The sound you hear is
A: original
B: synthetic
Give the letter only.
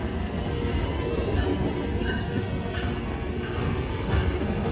B